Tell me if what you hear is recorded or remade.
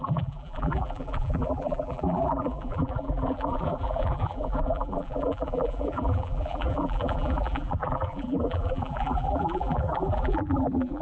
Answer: remade